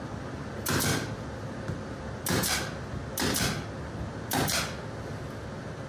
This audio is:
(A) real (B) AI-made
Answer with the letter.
A